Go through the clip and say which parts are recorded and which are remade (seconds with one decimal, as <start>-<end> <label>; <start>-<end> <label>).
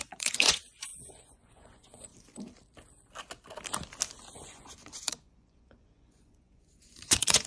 0.0-2.1 remade; 2.1-4.3 recorded; 4.3-7.5 remade